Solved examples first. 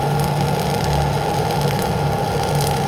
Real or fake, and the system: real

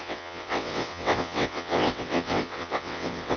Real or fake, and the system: fake, vocoder, WaveNeXt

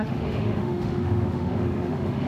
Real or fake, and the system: fake, autoencoder, DAC-VAE